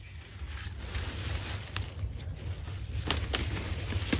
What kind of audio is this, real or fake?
real